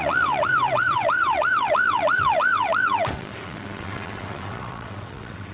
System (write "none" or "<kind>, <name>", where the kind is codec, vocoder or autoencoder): vocoder, WaveNeXt